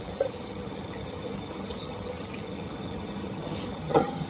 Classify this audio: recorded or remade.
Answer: remade